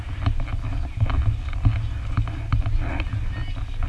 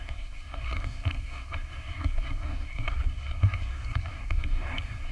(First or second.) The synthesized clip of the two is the second